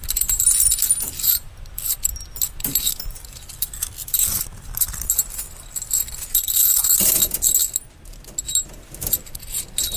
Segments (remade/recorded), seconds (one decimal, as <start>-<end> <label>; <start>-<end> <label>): 0.0-10.0 recorded

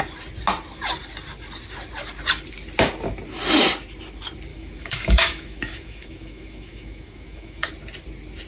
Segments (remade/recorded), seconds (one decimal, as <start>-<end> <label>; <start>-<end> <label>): 0.0-4.5 recorded; 4.5-7.7 remade; 7.7-8.5 recorded

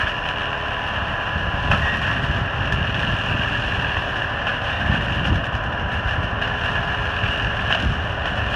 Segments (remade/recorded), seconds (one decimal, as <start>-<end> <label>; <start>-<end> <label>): 0.0-8.6 recorded